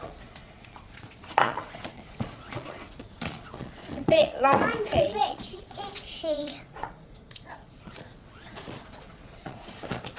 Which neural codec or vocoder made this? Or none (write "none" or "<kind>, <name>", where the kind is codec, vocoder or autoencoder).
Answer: vocoder, Vocos